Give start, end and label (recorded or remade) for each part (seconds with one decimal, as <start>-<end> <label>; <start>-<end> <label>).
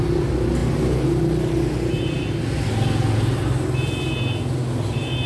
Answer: 0.0-5.3 recorded